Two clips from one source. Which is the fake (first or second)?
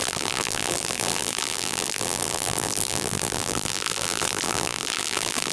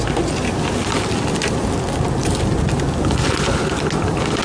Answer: first